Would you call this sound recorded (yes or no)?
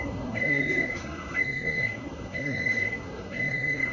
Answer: no